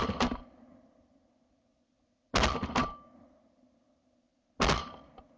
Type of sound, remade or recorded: recorded